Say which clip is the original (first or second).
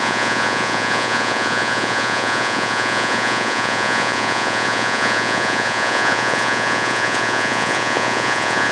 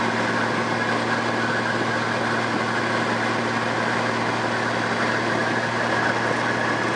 second